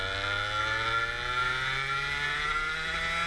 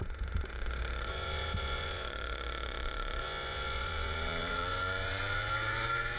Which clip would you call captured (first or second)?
first